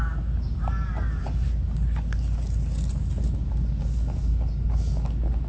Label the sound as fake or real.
real